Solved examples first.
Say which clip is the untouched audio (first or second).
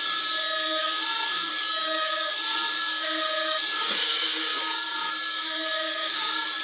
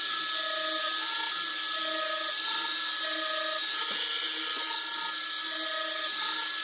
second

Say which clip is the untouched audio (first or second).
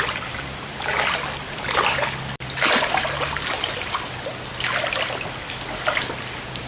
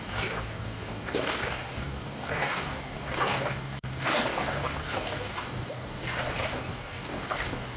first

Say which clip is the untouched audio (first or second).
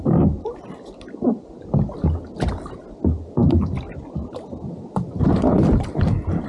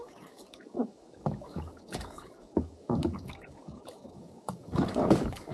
first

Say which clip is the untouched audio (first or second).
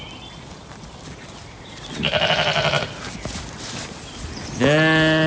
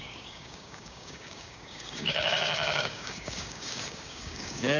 first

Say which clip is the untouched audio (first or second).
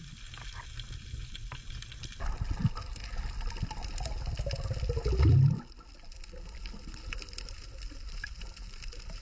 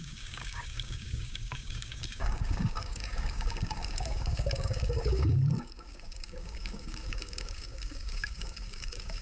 first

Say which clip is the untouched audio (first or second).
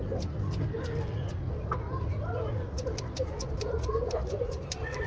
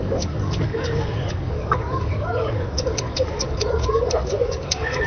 first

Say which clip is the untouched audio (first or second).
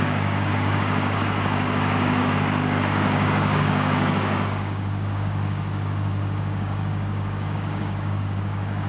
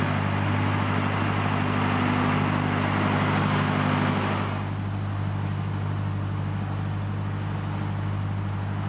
second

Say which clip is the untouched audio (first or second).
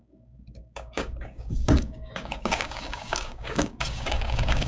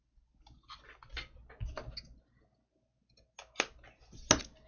second